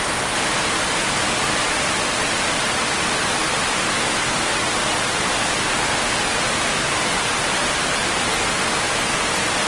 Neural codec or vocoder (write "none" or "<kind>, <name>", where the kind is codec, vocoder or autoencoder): none